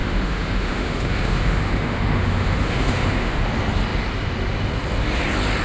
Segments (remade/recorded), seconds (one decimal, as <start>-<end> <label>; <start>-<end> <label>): 0.0-3.4 remade; 3.4-5.6 recorded